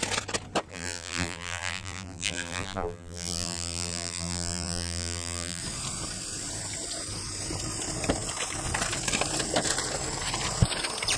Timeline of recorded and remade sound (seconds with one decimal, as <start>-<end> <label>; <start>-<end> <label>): 0.0-0.7 recorded; 0.7-5.6 remade; 5.6-11.2 recorded